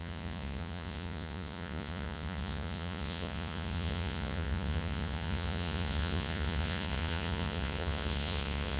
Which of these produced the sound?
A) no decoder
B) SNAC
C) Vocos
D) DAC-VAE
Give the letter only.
C